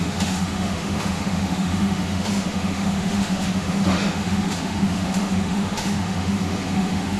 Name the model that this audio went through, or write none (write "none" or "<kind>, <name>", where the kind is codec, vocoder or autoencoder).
autoencoder, DAC-VAE